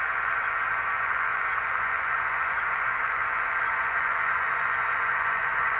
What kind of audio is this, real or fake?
fake